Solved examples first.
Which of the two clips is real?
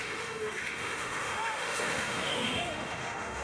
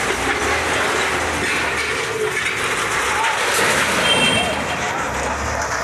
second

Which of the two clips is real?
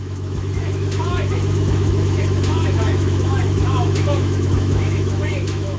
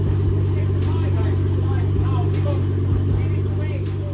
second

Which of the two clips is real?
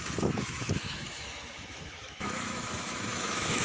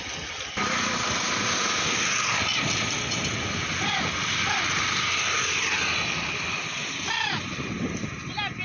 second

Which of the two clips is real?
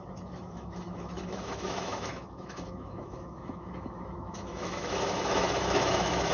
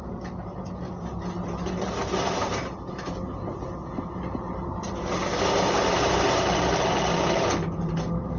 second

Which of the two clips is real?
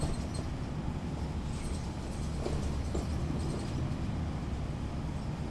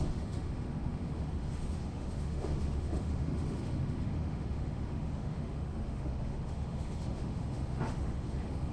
first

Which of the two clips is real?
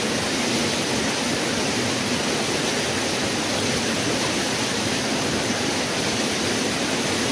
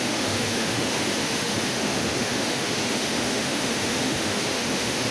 first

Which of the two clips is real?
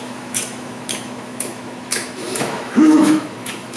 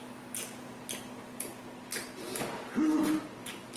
second